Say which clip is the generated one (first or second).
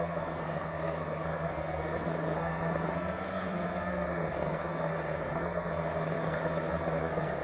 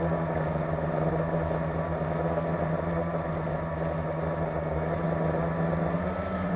first